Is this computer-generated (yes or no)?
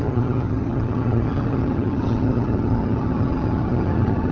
yes